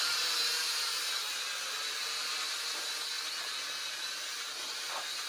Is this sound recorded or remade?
recorded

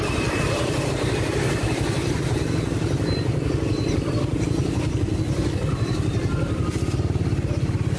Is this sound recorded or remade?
recorded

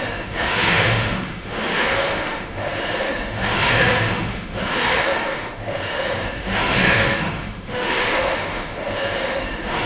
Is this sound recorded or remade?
remade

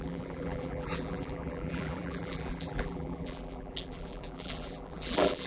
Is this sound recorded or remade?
remade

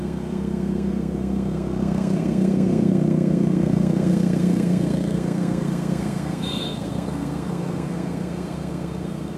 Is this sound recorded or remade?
remade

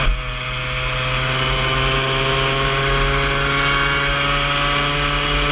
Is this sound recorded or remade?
recorded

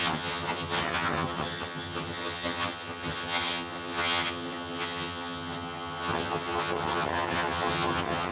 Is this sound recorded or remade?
remade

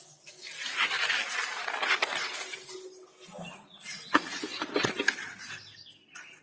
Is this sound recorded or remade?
recorded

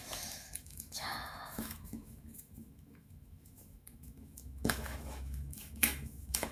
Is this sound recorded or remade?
remade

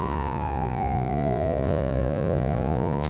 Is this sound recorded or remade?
remade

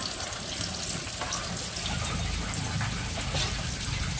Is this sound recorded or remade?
recorded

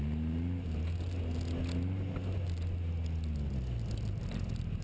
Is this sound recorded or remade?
recorded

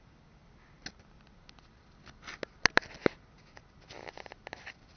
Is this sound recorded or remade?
recorded